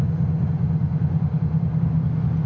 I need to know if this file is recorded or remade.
recorded